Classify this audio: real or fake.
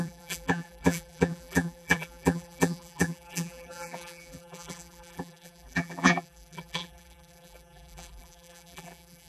fake